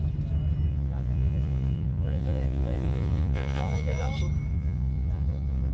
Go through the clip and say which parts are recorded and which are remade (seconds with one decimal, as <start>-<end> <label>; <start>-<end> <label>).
0.0-0.7 recorded; 0.7-4.1 remade; 4.1-4.5 recorded; 4.5-5.7 remade